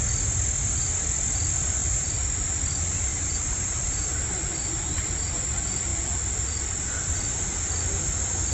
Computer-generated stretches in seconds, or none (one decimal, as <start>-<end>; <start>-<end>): 1.8-2.6; 3.1-5.5